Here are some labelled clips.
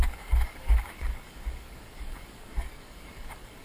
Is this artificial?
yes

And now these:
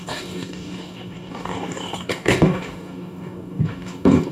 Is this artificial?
yes